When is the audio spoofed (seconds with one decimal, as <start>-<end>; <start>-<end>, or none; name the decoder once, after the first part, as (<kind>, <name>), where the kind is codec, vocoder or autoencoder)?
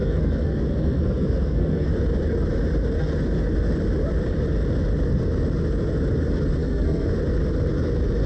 0.0-1.9 (codec, SNAC); 6.6-7.1